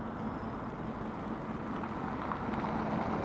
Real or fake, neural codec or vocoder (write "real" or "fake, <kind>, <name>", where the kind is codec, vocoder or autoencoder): real